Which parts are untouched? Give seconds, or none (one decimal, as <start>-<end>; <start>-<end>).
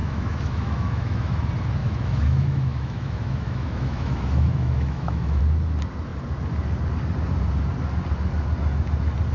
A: 1.4-1.8; 5.4-9.3